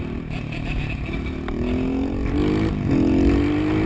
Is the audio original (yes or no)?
yes